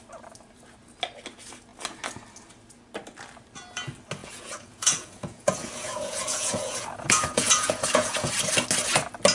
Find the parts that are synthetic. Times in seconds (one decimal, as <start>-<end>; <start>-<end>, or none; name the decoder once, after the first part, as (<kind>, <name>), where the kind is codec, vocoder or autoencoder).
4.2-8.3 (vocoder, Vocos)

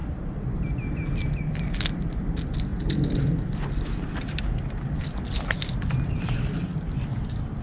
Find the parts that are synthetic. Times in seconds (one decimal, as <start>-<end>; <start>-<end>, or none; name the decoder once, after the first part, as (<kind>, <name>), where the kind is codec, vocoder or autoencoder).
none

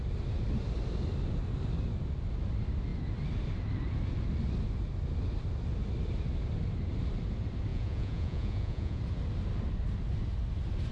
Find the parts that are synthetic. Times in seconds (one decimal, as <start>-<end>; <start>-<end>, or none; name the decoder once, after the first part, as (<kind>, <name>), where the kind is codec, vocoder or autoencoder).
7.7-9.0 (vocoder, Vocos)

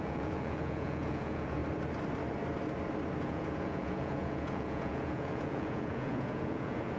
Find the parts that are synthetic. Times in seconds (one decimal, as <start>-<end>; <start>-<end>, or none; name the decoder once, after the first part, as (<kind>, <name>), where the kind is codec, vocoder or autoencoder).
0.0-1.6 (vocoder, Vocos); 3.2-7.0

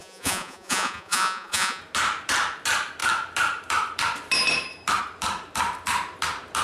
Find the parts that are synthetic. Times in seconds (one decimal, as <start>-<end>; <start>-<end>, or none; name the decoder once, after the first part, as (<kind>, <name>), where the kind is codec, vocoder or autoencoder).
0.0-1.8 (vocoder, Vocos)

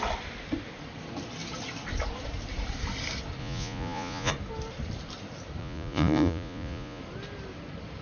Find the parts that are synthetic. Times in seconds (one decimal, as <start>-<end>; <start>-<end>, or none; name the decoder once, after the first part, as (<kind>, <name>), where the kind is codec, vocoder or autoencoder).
3.4-4.3 (vocoder, Vocos); 5.6-7.0